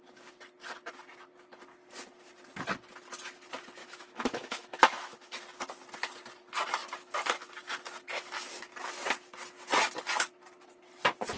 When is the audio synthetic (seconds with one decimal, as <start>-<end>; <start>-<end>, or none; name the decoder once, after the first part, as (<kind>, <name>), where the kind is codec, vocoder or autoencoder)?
3.8-5.4 (autoencoder, DAC-VAE)